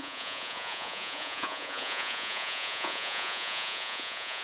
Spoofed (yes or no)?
yes